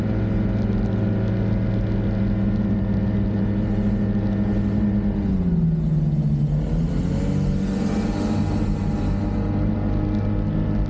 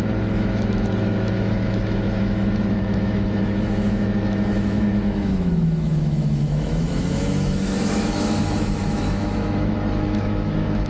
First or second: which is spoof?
second